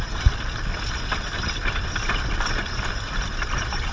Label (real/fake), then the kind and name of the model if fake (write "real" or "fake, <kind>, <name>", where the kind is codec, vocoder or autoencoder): real